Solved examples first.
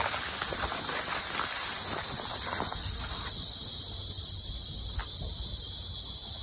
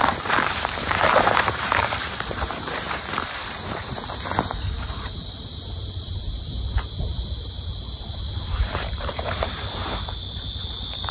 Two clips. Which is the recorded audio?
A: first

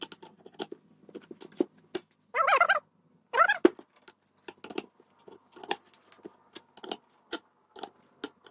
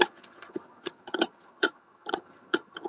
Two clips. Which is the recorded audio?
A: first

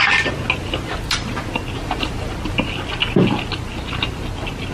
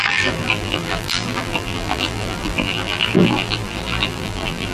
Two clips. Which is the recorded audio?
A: first